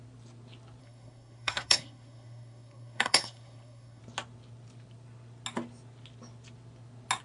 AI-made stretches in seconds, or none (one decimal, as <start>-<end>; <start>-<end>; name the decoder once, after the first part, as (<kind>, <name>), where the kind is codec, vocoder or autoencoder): 0.8-4.0 (codec, SNAC)